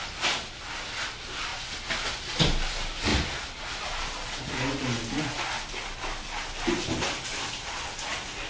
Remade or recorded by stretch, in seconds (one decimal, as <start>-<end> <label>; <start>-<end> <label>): 0.0-8.5 recorded